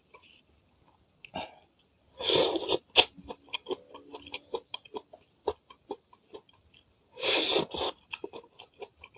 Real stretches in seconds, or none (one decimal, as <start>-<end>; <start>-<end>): 0.0-9.2